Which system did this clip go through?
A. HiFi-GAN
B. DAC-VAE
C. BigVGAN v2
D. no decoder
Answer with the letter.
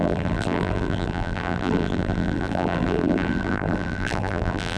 C